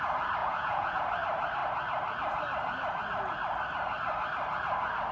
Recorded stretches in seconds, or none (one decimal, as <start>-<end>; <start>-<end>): 0.0-0.4; 1.0-5.1